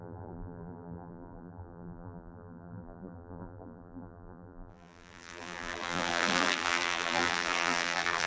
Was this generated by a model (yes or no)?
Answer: yes